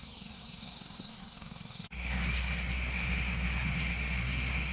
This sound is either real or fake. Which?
fake